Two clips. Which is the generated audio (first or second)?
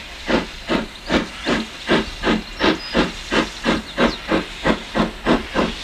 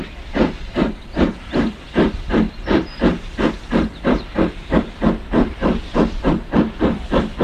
second